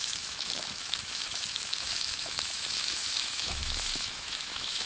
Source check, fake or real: fake